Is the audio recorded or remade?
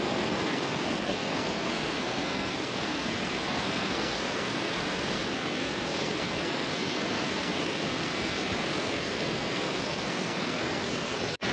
remade